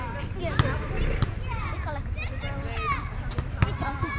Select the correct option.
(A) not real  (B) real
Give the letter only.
B